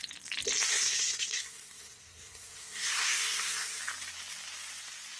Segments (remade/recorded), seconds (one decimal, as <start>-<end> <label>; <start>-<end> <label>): 0.0-0.7 recorded; 0.7-3.8 remade; 3.8-5.2 recorded